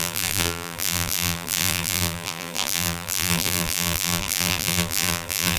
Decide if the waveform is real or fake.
fake